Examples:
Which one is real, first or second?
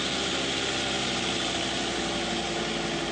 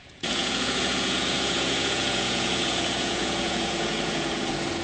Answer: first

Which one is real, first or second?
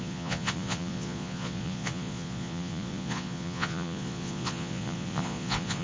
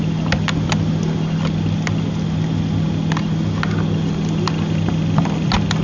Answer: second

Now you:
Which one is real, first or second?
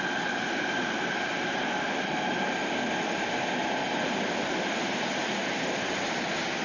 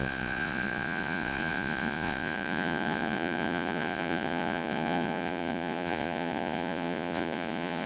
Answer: first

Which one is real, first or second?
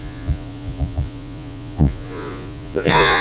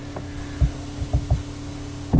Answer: second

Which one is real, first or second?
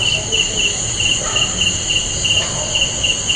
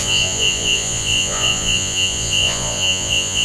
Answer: first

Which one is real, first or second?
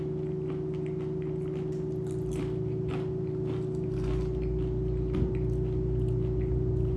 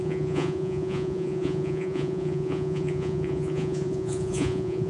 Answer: first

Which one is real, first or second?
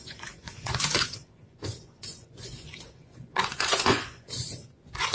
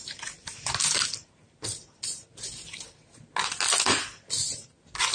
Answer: second